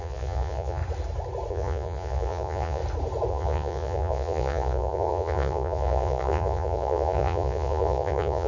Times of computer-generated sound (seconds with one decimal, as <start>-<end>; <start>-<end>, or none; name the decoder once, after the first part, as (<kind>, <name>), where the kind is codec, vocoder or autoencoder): 0.0-0.8 (vocoder, Vocos); 1.5-2.8; 3.3-8.5